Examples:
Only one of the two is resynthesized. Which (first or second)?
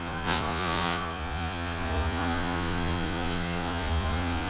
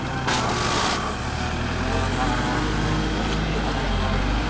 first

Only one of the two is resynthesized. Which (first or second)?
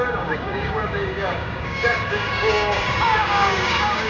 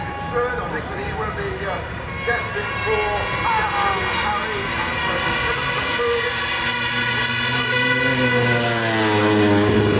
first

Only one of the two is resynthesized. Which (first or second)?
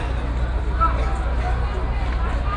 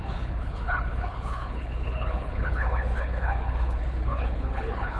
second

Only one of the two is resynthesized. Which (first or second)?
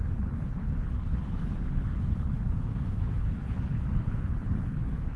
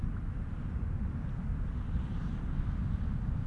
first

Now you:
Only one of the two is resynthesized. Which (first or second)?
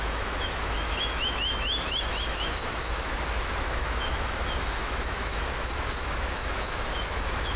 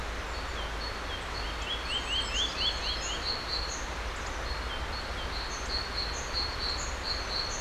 first